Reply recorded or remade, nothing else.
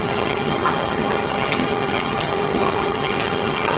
remade